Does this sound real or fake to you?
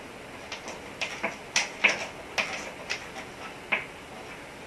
real